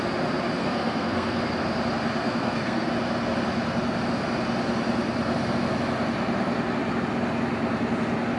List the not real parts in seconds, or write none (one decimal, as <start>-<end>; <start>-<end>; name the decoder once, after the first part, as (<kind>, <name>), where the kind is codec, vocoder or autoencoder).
0.6-1.4 (codec, SNAC); 2.2-2.9